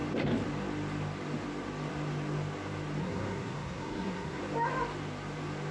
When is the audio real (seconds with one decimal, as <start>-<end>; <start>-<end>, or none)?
0.0-3.0; 4.4-5.7